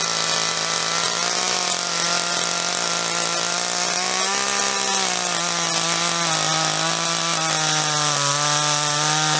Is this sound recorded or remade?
recorded